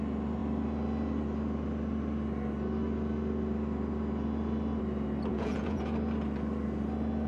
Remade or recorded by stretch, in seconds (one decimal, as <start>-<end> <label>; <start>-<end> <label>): 0.0-5.3 recorded; 5.3-5.8 remade; 5.8-7.3 recorded